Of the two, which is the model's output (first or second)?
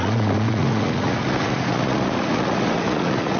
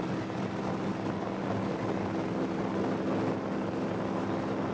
first